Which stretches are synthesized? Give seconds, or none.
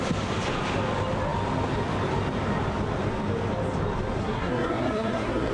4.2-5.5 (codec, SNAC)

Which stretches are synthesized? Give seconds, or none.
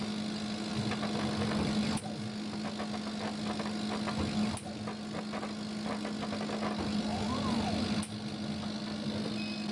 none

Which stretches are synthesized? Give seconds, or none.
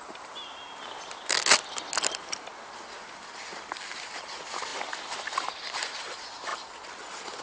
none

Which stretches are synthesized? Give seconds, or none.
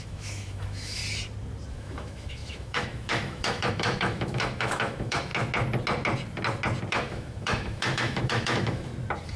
0.0-1.0 (autoencoder, DAC-VAE); 1.7-5.3; 6.9-8.9